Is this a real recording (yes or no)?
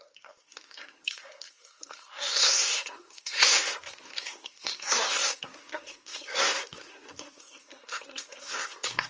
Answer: no